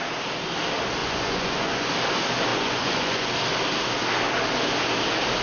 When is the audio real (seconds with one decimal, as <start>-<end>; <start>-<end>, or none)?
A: 0.0-1.0; 1.9-2.5; 3.3-5.4